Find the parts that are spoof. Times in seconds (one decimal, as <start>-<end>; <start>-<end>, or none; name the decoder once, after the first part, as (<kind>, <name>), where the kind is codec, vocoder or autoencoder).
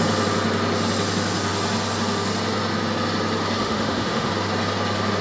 3.6-4.3 (autoencoder, DAC-VAE)